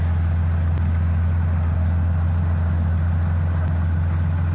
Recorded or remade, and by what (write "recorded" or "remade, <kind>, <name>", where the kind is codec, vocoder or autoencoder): recorded